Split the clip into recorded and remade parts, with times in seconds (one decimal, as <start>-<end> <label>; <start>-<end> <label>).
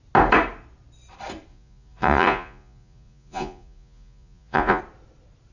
0.0-1.5 recorded; 1.5-4.8 remade; 4.8-5.5 recorded